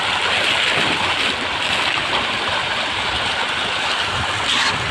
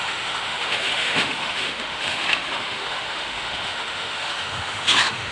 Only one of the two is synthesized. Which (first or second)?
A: second